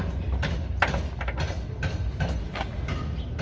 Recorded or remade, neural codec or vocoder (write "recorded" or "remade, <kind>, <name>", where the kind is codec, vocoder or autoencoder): recorded